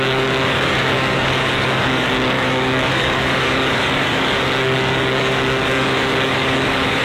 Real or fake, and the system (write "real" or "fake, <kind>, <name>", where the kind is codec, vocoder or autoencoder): fake, codec, DAC